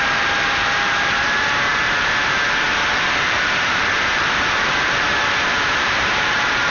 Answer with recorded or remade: remade